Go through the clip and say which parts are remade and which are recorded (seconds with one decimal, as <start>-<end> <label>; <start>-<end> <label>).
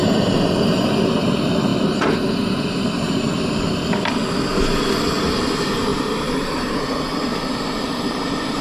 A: 0.0-5.9 recorded; 5.9-6.8 remade; 6.8-8.6 recorded